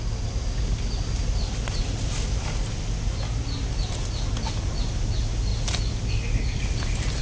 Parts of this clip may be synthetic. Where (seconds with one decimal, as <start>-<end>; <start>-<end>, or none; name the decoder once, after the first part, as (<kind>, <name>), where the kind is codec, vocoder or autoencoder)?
none